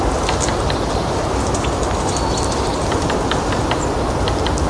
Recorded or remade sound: recorded